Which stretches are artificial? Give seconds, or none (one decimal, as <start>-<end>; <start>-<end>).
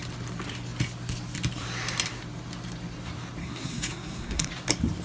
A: 3.4-4.5